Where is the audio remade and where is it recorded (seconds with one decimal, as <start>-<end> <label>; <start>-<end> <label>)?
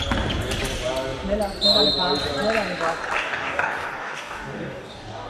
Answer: 0.0-3.2 recorded; 3.2-5.3 remade